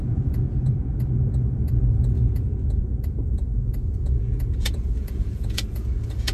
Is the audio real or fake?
fake